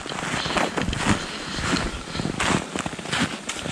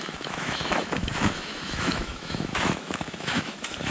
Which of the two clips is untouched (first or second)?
first